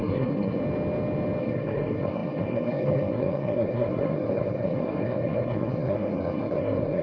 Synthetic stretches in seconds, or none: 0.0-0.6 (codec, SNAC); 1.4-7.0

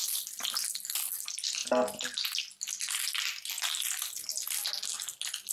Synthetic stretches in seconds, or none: none

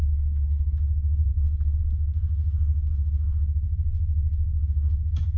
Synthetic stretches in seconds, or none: 1.3-1.8 (codec, SNAC)

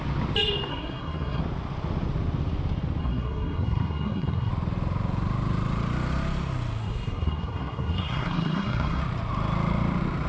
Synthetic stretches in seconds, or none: 0.7-1.4 (codec, SNAC); 3.0-4.5; 6.8-9.0

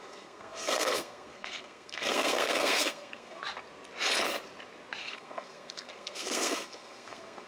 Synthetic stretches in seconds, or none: 0.0-3.4 (codec, SNAC); 5.0-7.5

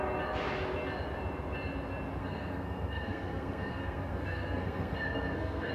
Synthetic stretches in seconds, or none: 2.2-5.7 (codec, SNAC)

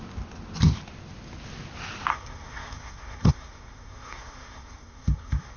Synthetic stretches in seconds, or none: 2.1-5.6 (codec, SNAC)